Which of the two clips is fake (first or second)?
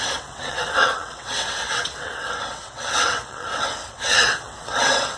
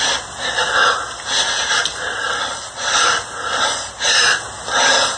first